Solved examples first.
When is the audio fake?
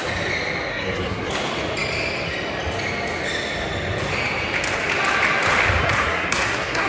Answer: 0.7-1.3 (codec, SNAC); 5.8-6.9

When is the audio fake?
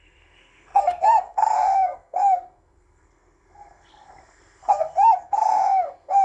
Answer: 0.0-6.2 (codec, SNAC)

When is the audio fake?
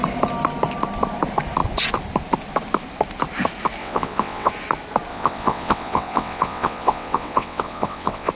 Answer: 3.8-4.5 (vocoder, WaveNeXt); 5.1-8.3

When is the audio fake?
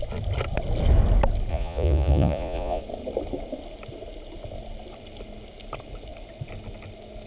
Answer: 1.5-2.8 (vocoder, Vocos)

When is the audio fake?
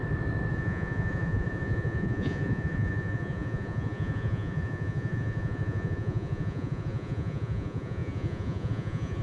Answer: 0.5-9.2 (vocoder, Vocos)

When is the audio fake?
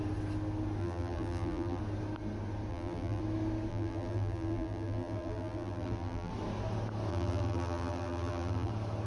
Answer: 0.8-1.8 (vocoder, BigVGAN v2); 2.7-3.2; 3.7-6.3; 7.1-8.7